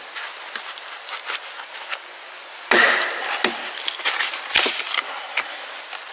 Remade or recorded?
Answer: recorded